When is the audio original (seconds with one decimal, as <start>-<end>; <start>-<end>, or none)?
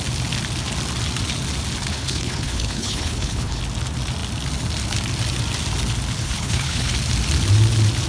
0.0-1.9; 3.6-6.2; 6.9-8.1